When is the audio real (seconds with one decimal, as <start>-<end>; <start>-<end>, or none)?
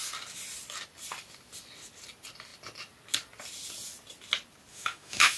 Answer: 0.0-4.7